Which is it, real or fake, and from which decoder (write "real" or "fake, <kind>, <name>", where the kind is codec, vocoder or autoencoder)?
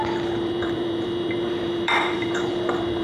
fake, vocoder, BigVGAN v2